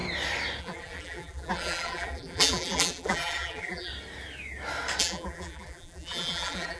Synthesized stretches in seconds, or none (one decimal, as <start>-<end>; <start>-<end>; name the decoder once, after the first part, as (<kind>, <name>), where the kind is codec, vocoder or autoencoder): 0.6-3.9 (vocoder, BigVGAN v2); 5.0-6.8